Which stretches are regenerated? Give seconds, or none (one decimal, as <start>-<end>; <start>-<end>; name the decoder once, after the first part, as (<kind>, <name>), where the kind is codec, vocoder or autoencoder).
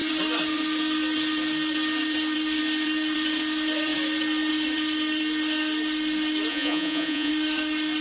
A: 6.5-7.3 (vocoder, Vocos)